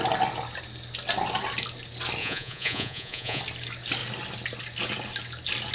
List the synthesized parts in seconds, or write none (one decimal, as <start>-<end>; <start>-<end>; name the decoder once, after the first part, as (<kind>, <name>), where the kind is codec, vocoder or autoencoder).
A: 2.2-3.4 (vocoder, Vocos)